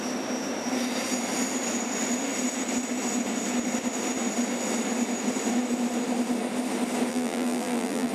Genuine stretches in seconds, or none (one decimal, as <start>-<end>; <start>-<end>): 0.0-7.1